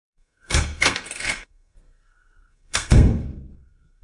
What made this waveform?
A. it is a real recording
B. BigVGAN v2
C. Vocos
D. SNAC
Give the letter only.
D